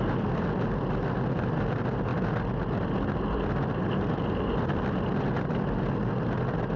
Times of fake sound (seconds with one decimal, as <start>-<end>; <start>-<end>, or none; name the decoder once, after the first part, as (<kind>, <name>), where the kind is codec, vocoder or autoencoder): none